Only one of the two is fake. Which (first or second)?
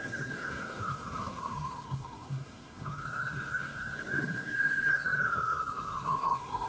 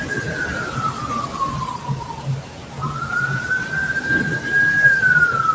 first